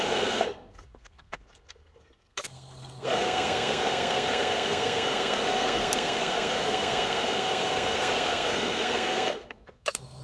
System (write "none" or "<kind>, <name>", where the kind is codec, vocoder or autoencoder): codec, SNAC